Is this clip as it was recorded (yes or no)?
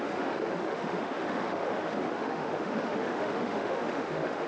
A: no